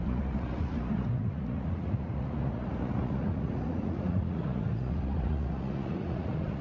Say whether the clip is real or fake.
fake